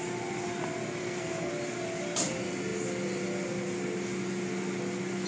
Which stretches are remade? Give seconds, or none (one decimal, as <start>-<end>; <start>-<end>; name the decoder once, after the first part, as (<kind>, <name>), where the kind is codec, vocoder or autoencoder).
1.0-1.5 (codec, SNAC)